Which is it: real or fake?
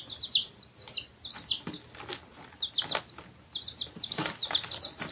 real